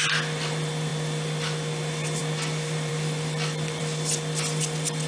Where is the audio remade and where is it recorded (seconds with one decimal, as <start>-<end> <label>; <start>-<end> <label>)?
0.0-5.1 recorded